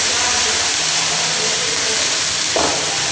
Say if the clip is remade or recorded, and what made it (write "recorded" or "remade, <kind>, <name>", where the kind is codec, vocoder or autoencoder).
recorded